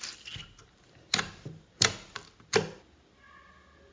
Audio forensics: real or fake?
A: real